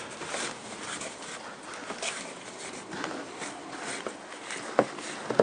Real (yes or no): yes